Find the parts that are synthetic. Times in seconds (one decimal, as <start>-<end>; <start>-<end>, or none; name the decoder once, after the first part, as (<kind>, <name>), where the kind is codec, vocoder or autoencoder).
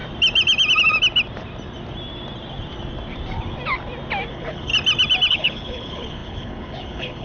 4.3-4.7 (codec, HILCodec); 5.3-7.2